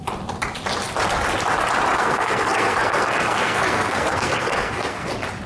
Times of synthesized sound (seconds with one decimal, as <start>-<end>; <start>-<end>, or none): 1.9-5.1